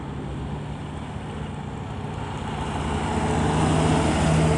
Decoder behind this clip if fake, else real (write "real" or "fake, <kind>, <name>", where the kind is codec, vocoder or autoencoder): real